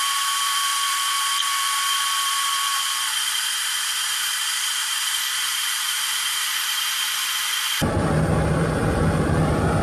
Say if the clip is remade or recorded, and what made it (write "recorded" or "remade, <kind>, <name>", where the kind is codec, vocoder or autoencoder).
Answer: remade, vocoder, BigVGAN v2